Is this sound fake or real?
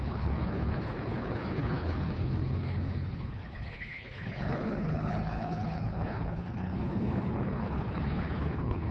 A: fake